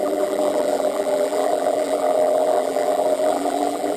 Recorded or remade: remade